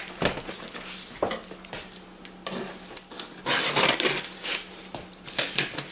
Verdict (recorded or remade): recorded